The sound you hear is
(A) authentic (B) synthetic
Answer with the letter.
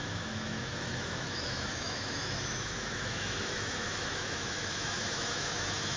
B